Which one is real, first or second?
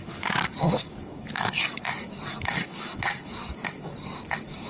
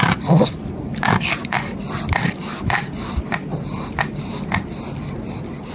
second